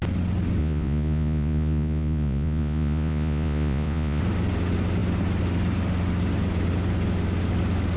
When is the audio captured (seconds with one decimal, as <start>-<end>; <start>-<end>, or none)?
0.0-0.6; 4.2-8.0